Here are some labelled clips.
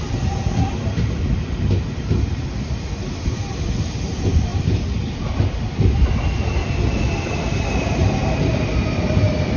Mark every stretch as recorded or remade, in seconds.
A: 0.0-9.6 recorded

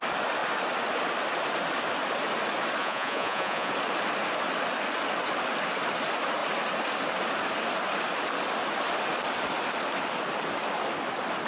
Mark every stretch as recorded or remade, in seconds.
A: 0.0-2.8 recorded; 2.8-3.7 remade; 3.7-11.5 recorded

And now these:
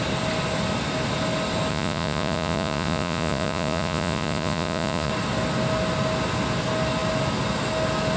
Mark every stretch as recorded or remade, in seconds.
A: 0.0-1.7 recorded; 1.7-5.1 remade; 5.1-8.2 recorded

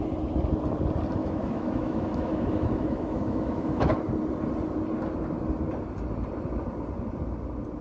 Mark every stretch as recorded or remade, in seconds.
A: 0.0-1.2 recorded; 1.2-3.9 remade; 3.9-7.8 recorded

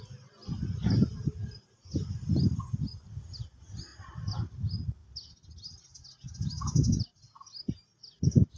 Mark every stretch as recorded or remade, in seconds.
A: 0.0-8.6 recorded

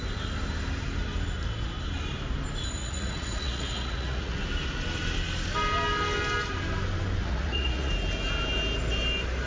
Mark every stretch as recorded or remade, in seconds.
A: 0.0-2.8 recorded; 2.8-4.4 remade; 4.4-7.2 recorded; 7.2-7.9 remade; 7.9-9.5 recorded